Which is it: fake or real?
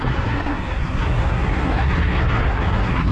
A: fake